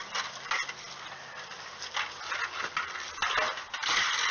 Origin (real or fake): real